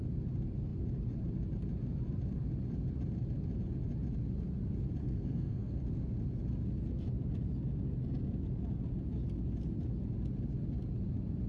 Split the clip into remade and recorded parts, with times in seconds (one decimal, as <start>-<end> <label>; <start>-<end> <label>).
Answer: 0.0-5.0 recorded; 5.0-5.8 remade; 5.8-11.5 recorded